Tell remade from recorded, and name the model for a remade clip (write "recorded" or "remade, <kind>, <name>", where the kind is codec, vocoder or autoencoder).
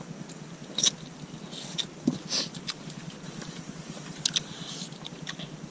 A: recorded